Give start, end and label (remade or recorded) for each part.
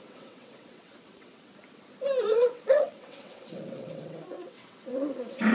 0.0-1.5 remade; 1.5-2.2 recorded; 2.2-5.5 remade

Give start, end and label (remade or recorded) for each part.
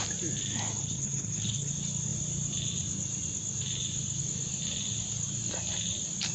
0.0-0.8 recorded; 0.8-1.7 remade; 1.7-6.3 recorded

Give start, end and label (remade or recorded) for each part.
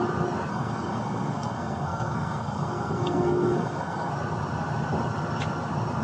0.0-0.5 recorded; 0.5-4.1 remade; 4.1-6.0 recorded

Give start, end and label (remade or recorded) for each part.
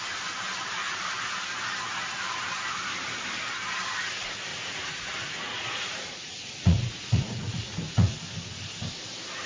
0.0-4.5 recorded; 4.5-5.1 remade; 5.1-5.5 recorded; 5.5-8.2 remade; 8.2-9.5 recorded